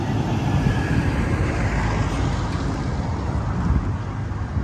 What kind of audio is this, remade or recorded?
recorded